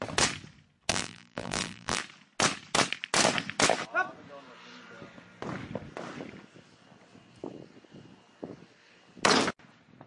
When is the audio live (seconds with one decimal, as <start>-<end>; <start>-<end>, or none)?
0.0-0.9; 2.0-10.1